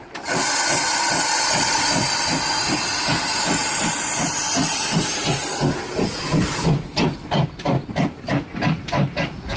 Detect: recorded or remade recorded